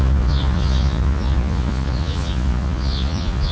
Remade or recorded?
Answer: remade